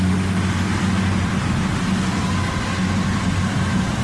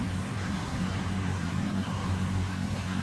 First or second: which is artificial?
second